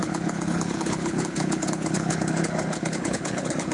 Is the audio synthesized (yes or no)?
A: yes